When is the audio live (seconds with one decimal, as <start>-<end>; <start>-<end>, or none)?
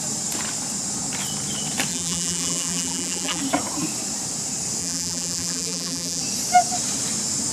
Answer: 0.0-1.9; 3.4-4.8; 6.2-7.5